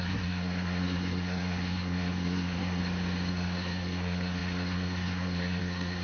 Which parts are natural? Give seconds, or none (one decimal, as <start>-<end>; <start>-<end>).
2.8-3.3